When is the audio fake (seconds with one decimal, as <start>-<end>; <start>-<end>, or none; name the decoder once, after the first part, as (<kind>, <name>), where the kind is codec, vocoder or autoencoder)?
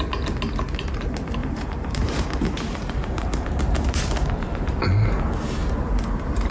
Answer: 1.4-4.8 (vocoder, BigVGAN v2)